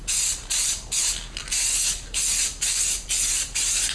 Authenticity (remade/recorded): recorded